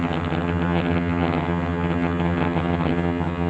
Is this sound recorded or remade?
remade